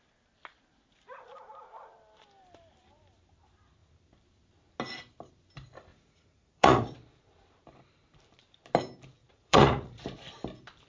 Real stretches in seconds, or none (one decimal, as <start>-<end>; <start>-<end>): 0.0-5.9; 6.9-9.2; 10.0-10.9